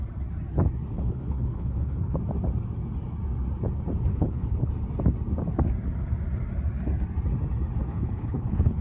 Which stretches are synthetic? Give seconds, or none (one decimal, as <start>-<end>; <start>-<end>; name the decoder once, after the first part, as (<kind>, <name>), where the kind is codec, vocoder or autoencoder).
0.9-2.2 (codec, HILCodec); 4.1-4.7; 7.9-8.8